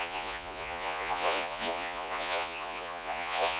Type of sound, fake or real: fake